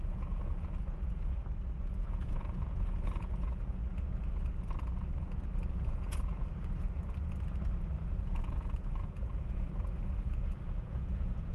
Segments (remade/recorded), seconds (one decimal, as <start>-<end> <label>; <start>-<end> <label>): 0.0-1.4 remade; 1.4-1.9 recorded; 1.9-3.8 remade; 3.8-5.7 recorded; 5.7-6.2 remade; 6.2-8.0 recorded; 8.0-11.5 remade